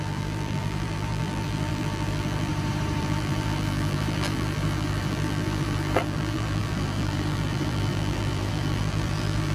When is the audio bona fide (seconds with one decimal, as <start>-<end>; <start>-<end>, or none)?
2.5-3.0